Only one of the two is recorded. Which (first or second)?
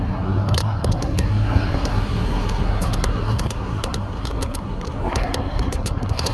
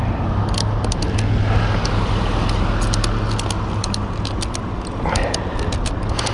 second